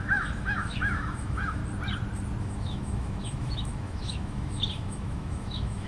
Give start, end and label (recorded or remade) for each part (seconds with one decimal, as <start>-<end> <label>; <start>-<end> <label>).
0.0-1.6 remade; 1.6-2.4 recorded; 2.4-5.9 remade